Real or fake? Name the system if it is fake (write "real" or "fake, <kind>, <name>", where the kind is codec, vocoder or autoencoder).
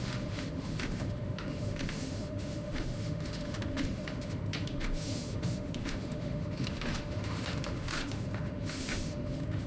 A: fake, autoencoder, DAC-VAE